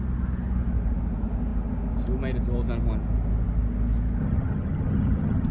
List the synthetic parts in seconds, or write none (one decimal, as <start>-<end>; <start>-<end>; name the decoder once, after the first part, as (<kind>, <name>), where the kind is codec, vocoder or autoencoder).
4.2-5.5 (vocoder, HiFi-GAN)